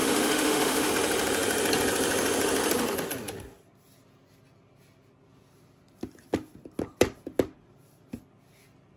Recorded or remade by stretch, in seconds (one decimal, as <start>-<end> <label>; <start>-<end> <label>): 0.0-0.9 remade; 0.9-9.0 recorded

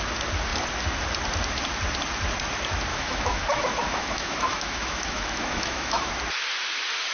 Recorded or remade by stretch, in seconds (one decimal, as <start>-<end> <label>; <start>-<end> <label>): 0.0-2.9 recorded; 2.9-6.1 remade; 6.1-7.1 recorded

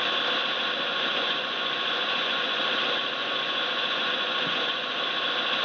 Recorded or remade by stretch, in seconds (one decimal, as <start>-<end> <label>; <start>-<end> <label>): 0.0-0.9 recorded; 0.9-2.6 remade; 2.6-3.2 recorded; 3.2-5.0 remade; 5.0-5.6 recorded

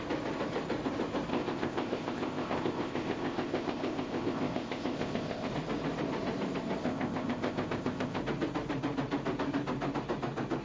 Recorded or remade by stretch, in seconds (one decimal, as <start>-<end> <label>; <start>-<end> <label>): 0.0-1.3 recorded; 1.3-5.5 remade; 5.5-6.8 recorded; 6.8-8.2 remade; 8.2-10.6 recorded

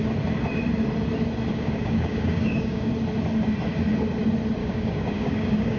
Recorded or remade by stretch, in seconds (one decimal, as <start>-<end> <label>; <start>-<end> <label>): 0.0-1.5 recorded; 1.5-2.9 remade; 2.9-4.6 recorded; 4.6-5.8 remade

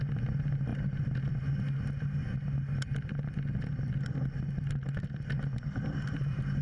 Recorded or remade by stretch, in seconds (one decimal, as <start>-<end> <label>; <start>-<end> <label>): 0.0-6.6 recorded

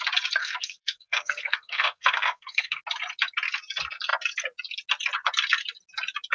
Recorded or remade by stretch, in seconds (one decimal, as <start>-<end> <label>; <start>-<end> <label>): 0.0-0.4 recorded; 0.4-2.8 remade; 2.8-6.3 recorded